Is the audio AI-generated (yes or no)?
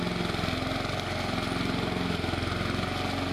no